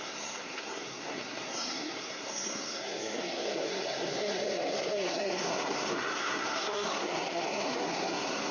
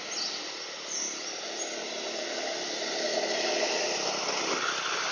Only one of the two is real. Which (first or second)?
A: second